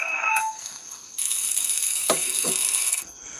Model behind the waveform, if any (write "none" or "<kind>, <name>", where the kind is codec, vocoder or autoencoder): codec, SNAC